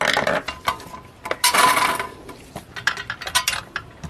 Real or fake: real